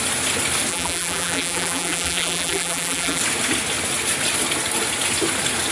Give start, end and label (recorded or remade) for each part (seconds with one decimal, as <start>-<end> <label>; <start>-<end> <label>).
0.0-0.7 recorded; 0.7-3.2 remade; 3.2-5.7 recorded